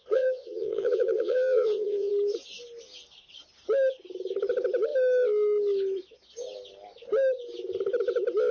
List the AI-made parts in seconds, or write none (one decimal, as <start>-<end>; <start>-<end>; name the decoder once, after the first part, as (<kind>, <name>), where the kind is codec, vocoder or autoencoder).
0.0-2.1 (vocoder, Vocos)